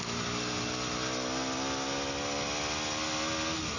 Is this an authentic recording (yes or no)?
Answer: yes